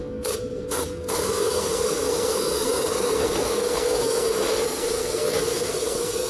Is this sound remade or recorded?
remade